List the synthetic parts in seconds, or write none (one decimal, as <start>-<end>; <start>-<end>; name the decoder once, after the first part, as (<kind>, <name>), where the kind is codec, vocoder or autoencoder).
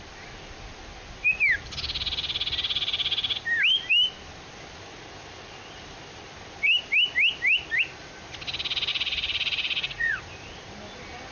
8.9-10.2 (vocoder, Vocos)